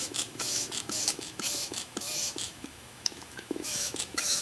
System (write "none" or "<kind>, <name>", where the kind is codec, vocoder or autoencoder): autoencoder, DAC-VAE